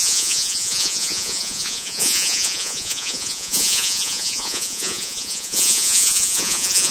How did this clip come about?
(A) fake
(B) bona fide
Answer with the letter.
A